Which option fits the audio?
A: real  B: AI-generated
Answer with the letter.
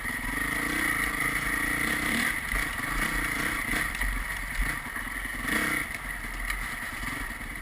A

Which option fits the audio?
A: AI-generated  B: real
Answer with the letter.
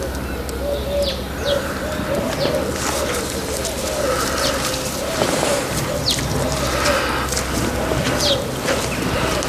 B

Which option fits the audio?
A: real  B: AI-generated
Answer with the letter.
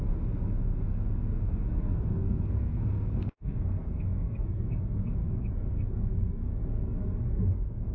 B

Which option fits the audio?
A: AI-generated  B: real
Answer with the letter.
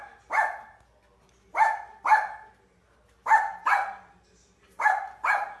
B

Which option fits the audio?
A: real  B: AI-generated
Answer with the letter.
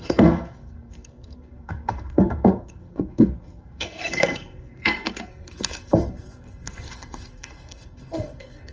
B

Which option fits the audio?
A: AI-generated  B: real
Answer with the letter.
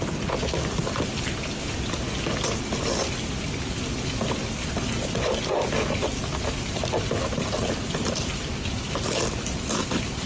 B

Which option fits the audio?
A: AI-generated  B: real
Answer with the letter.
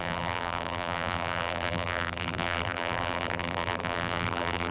A